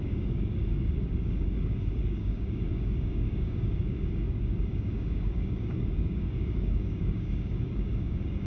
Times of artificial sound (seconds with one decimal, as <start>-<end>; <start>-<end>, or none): 0.0-8.5